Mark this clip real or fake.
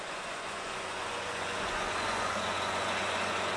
fake